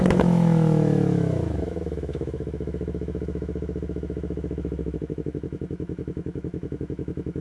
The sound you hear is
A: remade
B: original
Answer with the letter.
A